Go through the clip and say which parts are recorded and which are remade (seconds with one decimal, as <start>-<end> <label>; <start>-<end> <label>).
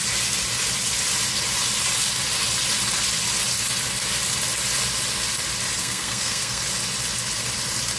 0.0-5.8 recorded; 5.8-6.6 remade; 6.6-8.0 recorded